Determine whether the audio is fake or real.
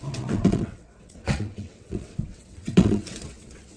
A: fake